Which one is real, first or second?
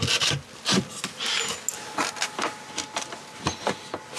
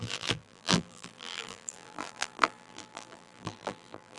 first